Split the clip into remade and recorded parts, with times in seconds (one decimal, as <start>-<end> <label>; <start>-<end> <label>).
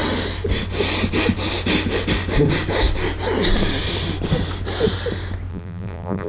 0.0-5.5 recorded; 5.5-6.3 remade